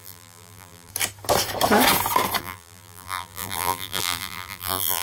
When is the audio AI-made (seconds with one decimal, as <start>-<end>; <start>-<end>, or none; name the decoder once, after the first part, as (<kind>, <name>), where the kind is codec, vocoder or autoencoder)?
0.0-0.9 (vocoder, BigVGAN v2); 2.4-5.0